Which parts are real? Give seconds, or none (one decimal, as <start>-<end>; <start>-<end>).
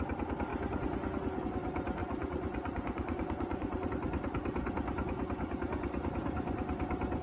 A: 0.0-2.0; 3.9-7.2